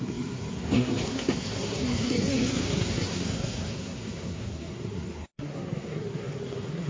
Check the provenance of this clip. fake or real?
fake